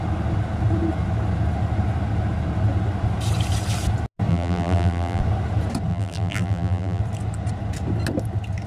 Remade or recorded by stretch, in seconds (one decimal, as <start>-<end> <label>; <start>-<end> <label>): 0.0-4.3 recorded; 4.3-5.2 remade; 5.2-5.9 recorded; 5.9-7.0 remade; 7.0-8.7 recorded